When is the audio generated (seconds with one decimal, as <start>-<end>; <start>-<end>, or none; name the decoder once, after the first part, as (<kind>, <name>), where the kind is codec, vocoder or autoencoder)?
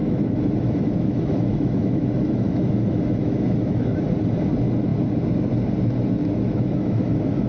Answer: 0.0-4.0 (autoencoder, DAC-VAE); 6.2-7.5